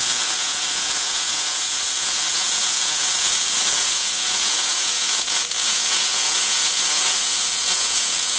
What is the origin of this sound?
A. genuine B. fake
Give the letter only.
B